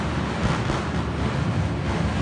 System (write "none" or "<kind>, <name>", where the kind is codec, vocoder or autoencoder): none